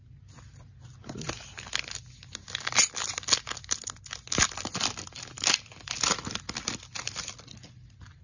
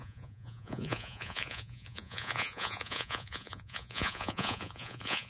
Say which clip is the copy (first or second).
second